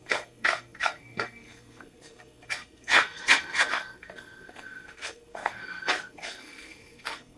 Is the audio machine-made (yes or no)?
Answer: yes